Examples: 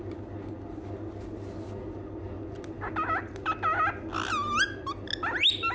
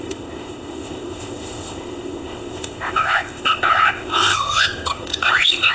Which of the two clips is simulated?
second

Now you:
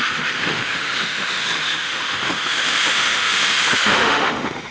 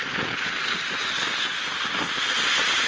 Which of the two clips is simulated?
first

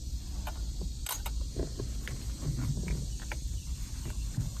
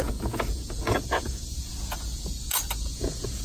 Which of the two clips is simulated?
second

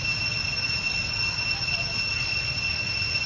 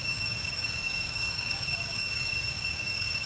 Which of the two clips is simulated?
second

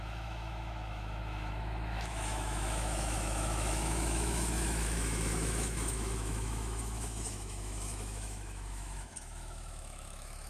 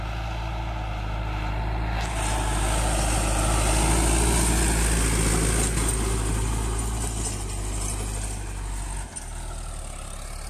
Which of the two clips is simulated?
first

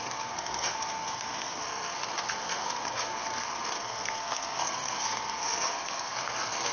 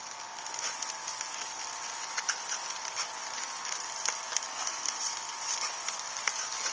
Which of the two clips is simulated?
first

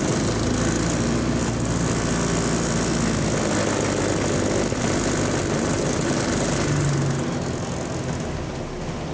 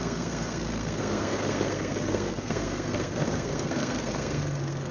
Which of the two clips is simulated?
second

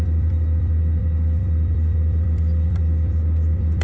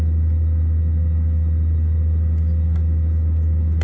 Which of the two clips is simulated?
first